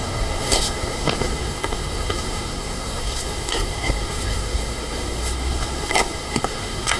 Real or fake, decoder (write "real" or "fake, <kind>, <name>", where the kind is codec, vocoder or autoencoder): fake, codec, SNAC